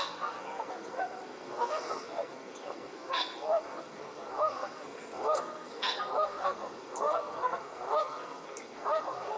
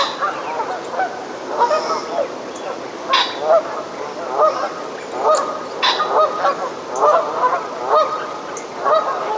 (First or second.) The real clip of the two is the second